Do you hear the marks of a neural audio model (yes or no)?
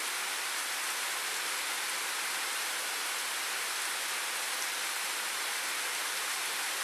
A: no